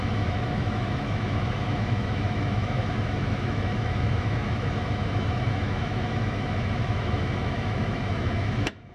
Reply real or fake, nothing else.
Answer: fake